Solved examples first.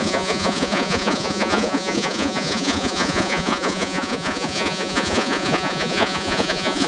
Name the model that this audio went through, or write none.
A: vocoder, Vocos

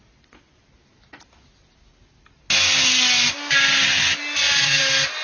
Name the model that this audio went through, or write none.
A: none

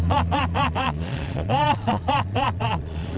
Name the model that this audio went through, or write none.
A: vocoder, Vocos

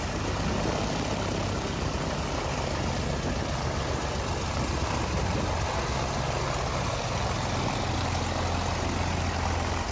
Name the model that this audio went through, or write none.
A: none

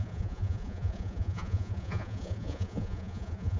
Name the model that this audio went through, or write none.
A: vocoder, Vocos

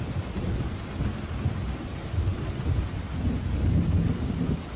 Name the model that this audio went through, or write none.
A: none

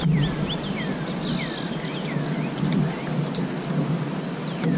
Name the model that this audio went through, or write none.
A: none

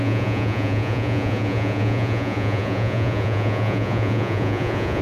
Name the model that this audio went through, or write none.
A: vocoder, Vocos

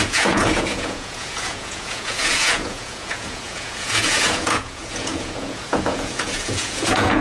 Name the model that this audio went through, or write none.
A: vocoder, Vocos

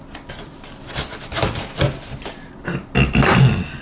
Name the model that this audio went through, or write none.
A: none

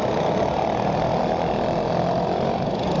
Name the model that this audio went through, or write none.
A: none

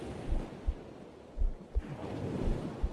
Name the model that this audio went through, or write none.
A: none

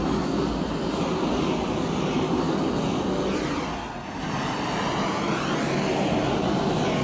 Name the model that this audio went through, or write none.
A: none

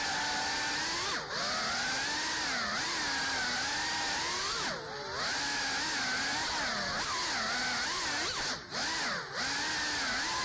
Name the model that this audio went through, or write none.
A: none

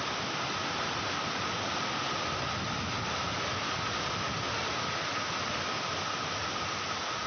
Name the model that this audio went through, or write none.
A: none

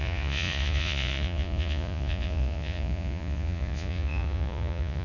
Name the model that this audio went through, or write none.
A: vocoder, Vocos